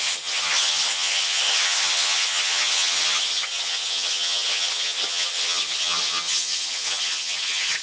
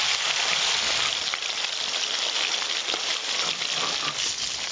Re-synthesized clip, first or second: first